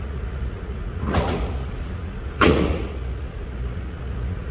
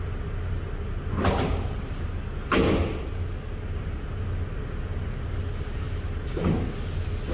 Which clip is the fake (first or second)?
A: first